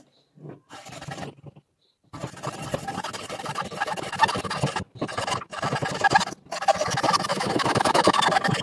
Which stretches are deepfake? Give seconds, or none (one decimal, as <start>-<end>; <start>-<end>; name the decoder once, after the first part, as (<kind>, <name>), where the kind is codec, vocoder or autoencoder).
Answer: 7.3-8.2 (autoencoder, DAC-VAE)